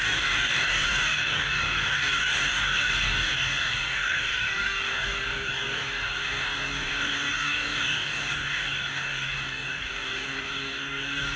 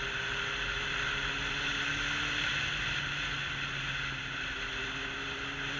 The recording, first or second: second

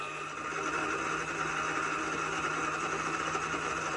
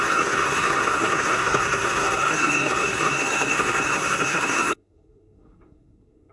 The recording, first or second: first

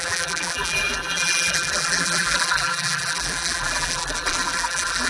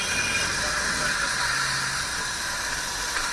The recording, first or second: second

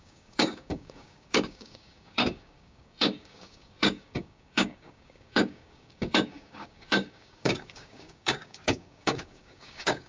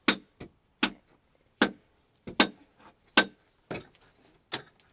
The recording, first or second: second